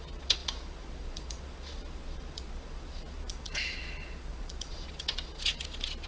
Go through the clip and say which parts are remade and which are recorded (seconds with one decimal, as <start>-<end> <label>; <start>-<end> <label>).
0.0-6.1 remade